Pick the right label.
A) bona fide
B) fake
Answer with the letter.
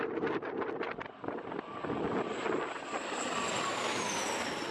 A